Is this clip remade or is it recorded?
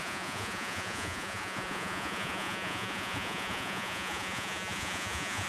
remade